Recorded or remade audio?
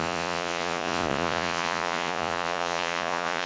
remade